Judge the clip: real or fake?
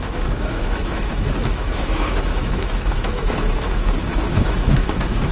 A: fake